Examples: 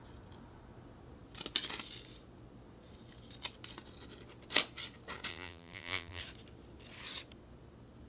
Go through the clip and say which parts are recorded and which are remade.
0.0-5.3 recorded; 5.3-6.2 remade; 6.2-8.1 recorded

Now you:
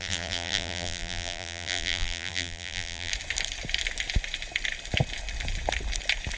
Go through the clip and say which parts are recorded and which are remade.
0.0-3.1 remade; 3.1-6.4 recorded

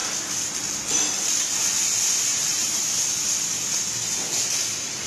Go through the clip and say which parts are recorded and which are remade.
0.0-2.3 recorded; 2.3-2.9 remade; 2.9-5.1 recorded

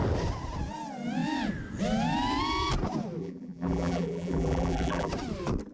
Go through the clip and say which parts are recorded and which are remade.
0.0-3.2 recorded; 3.2-5.1 remade; 5.1-5.7 recorded

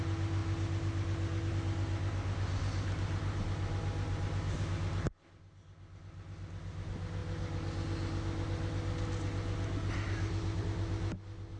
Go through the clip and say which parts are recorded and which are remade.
0.0-11.6 recorded

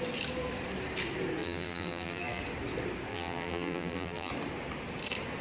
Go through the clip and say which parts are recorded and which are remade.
0.0-1.4 recorded; 1.4-2.4 remade; 2.4-3.1 recorded; 3.1-4.3 remade; 4.3-5.4 recorded

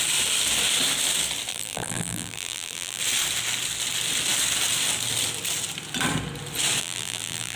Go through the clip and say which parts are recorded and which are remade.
0.0-1.5 recorded; 1.5-3.0 remade; 3.0-6.8 recorded; 6.8-7.6 remade